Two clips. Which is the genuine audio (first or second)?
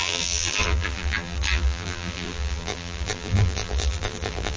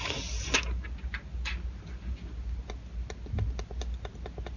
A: second